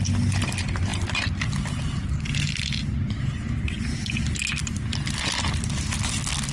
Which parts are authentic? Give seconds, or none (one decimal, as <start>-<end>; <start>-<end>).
0.0-6.5

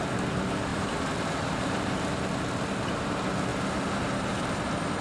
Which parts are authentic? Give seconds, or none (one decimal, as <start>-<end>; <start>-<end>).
0.0-3.5; 4.6-5.0

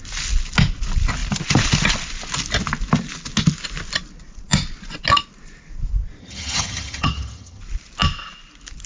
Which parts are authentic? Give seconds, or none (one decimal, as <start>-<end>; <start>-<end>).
0.0-6.2; 7.6-8.9

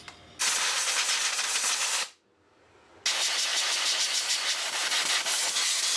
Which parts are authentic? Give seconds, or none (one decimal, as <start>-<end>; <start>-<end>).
0.0-6.0